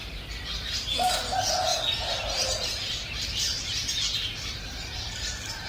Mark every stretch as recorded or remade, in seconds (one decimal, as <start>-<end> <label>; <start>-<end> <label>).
0.0-5.7 remade